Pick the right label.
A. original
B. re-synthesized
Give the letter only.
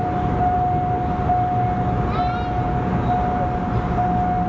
A